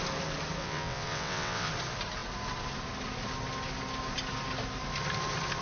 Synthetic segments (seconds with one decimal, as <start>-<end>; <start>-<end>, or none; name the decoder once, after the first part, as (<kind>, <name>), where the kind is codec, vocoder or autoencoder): 0.6-1.7 (vocoder, WaveNeXt)